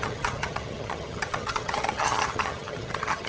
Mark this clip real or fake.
fake